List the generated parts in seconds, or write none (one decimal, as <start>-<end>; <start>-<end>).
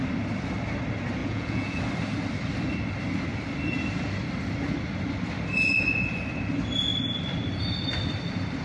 1.2-1.8